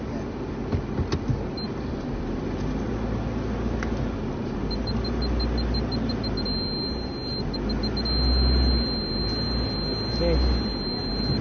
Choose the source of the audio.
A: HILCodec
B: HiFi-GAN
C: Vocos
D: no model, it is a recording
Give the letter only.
D